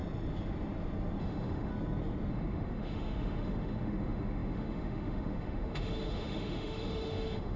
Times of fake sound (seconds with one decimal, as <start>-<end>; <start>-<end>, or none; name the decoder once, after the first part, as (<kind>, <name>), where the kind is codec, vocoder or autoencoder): 1.2-1.7 (autoencoder, DAC-VAE); 2.3-7.6